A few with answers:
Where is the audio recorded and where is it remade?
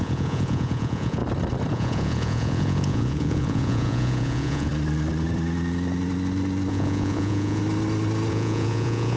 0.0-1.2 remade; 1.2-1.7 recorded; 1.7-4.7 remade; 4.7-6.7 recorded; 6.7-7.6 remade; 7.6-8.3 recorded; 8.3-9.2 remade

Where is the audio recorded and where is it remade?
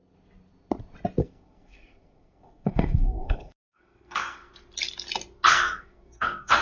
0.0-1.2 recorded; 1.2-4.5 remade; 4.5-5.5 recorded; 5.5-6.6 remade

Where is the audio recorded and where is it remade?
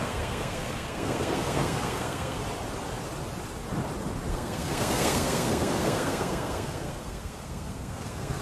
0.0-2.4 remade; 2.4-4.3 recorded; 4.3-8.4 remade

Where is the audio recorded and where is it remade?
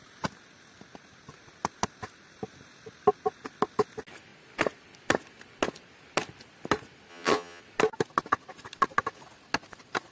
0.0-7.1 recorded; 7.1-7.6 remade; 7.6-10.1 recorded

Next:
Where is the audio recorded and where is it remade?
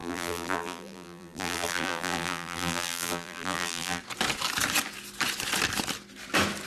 0.0-4.0 remade; 4.0-6.7 recorded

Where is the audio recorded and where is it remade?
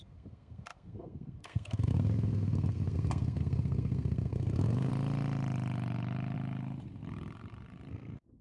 0.0-4.9 remade; 4.9-7.9 recorded; 7.9-8.4 remade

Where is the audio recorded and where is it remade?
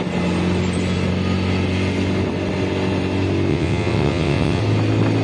0.0-3.5 recorded; 3.5-4.6 remade; 4.6-5.2 recorded